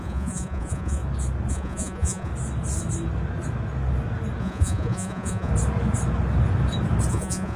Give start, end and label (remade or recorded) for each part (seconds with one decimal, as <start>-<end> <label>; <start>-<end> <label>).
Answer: 0.0-1.0 remade; 1.0-1.5 recorded; 1.5-2.3 remade; 2.3-4.4 recorded; 4.4-5.5 remade; 5.5-7.1 recorded; 7.1-7.6 remade